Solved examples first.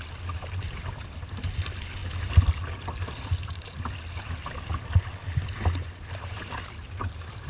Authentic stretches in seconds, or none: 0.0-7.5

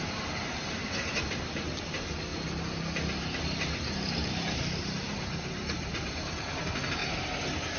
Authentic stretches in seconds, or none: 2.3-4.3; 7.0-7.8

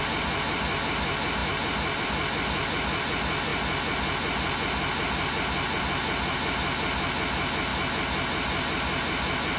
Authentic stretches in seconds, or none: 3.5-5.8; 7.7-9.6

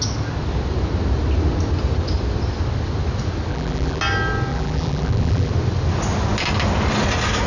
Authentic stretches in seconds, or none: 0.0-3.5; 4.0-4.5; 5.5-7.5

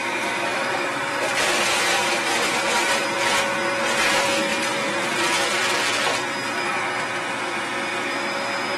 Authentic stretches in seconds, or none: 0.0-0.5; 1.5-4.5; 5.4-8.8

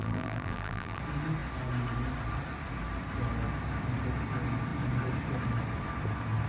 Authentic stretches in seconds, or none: 1.0-6.5